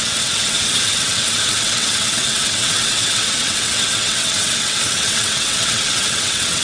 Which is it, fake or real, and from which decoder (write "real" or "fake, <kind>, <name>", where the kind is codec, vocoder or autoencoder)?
fake, vocoder, WaveNeXt